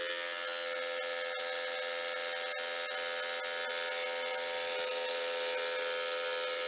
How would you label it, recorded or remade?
recorded